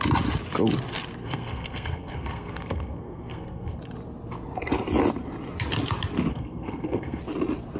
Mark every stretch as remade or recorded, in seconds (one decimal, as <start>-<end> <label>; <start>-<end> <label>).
0.0-1.2 recorded; 1.2-3.8 remade; 3.8-6.3 recorded; 6.3-7.2 remade; 7.2-7.8 recorded